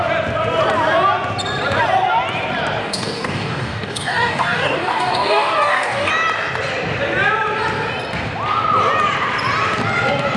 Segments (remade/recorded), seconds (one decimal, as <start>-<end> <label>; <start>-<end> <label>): 0.0-2.8 recorded; 2.8-6.1 remade; 6.1-10.4 recorded